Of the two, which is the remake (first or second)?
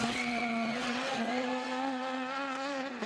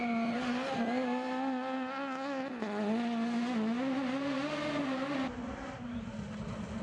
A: first